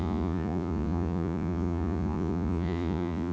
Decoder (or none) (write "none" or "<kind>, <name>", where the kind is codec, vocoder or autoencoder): vocoder, Vocos